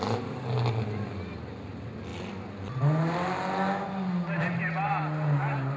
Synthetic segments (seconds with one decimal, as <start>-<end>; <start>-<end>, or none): none